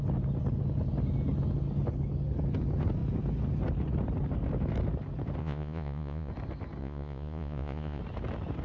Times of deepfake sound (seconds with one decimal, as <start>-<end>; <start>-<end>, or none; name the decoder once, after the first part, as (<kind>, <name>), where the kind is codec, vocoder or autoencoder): 5.4-6.3 (vocoder, Vocos); 6.8-8.0